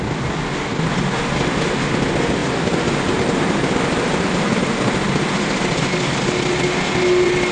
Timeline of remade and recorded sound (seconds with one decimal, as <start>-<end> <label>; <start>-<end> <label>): 0.0-2.4 recorded; 2.4-4.5 remade; 4.5-7.5 recorded